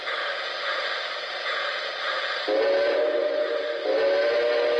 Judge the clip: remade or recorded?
recorded